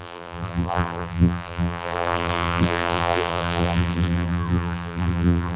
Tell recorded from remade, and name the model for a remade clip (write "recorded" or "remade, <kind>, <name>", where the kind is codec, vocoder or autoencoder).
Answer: remade, vocoder, BigVGAN v2